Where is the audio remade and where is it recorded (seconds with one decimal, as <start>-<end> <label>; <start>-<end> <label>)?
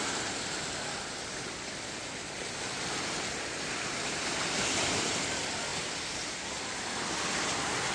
0.0-7.9 recorded